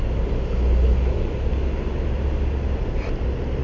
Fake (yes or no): no